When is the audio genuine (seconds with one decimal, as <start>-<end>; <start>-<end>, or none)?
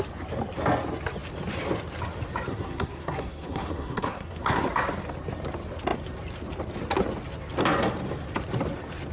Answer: 0.0-2.5; 4.6-9.1